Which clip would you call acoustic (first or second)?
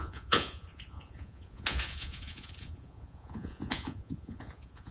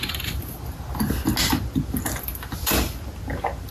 second